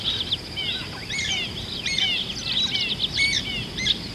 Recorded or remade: recorded